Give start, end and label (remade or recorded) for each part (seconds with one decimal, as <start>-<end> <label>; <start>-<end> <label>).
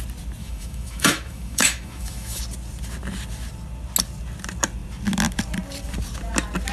0.0-0.4 recorded; 0.4-2.4 remade; 2.4-6.7 recorded